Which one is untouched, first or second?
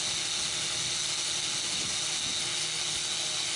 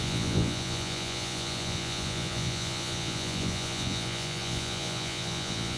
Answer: first